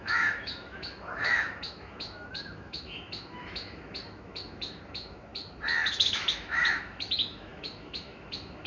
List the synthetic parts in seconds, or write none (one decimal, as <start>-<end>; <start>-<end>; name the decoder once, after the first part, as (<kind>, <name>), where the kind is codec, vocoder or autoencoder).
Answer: 0.0-5.3 (autoencoder, DAC-VAE); 5.9-8.7